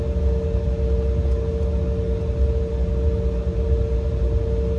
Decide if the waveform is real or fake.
real